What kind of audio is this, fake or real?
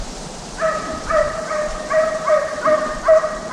fake